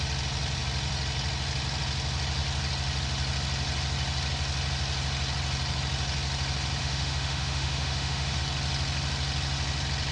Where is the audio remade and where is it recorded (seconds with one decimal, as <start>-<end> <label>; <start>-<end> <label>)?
0.0-6.8 recorded; 6.8-8.4 remade; 8.4-10.1 recorded